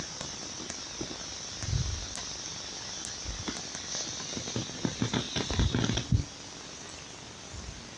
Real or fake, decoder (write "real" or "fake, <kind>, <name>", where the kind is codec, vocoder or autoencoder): real